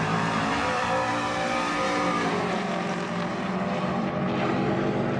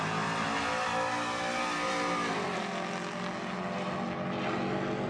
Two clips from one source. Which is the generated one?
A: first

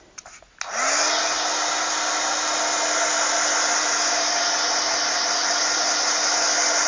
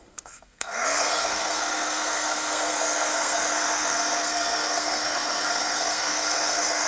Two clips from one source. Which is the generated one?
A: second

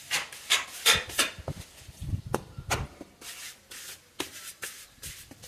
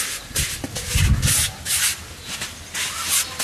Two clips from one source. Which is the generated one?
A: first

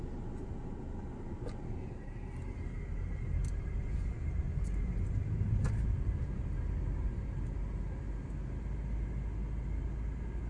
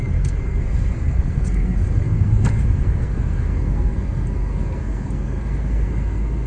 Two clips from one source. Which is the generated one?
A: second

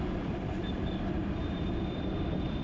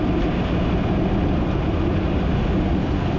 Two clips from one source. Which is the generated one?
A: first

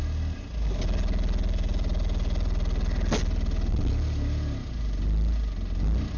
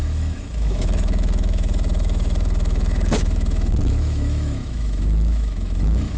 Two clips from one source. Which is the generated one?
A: second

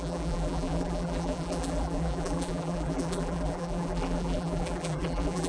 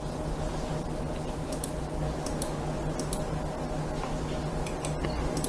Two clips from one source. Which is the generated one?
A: first